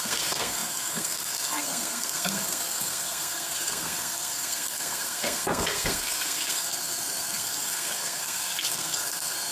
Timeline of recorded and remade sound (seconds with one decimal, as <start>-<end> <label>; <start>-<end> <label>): 0.0-9.5 remade